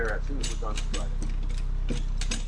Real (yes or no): yes